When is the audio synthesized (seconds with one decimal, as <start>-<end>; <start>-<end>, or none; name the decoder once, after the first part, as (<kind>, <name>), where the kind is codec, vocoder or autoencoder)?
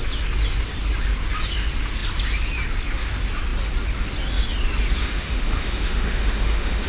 5.0-6.9 (autoencoder, DAC-VAE)